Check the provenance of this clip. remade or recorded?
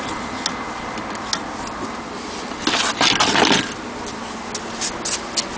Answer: recorded